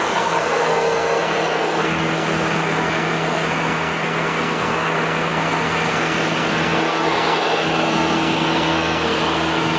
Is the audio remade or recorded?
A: remade